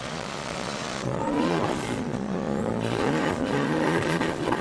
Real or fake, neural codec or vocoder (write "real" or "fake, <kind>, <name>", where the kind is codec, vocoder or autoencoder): fake, vocoder, Vocos